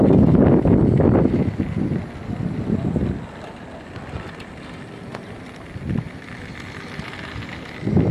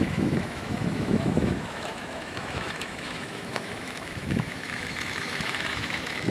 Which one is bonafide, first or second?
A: first